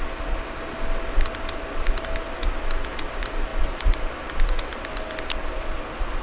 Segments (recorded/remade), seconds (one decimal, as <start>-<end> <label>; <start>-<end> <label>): 0.0-6.2 recorded